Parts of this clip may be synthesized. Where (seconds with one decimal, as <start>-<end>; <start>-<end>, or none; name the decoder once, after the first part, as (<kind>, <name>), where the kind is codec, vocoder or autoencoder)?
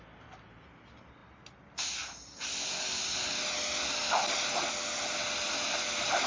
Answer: none